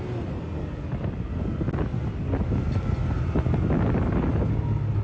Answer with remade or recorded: recorded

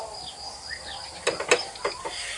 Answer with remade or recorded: recorded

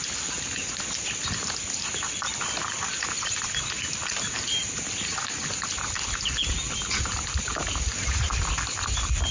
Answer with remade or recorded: recorded